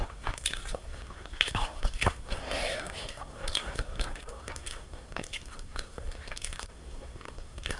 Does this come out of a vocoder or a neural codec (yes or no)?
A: yes